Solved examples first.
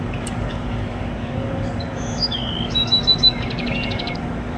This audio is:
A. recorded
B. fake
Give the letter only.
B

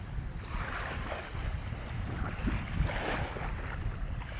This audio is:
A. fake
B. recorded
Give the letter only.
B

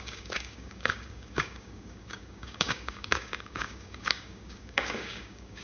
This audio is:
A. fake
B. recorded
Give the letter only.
A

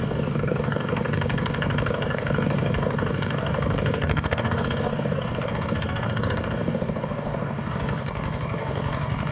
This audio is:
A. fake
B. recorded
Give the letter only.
A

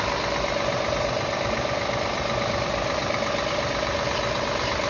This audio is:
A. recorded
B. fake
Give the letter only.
A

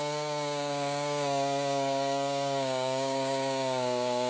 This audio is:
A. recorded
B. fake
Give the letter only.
B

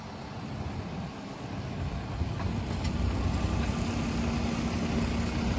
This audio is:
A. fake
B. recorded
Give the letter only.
B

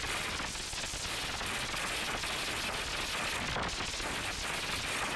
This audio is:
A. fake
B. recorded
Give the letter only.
B